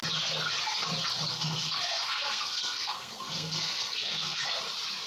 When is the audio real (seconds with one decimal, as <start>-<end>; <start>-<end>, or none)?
0.0-1.3; 4.4-5.1